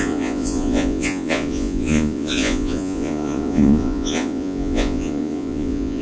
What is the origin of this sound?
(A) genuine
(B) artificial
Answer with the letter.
B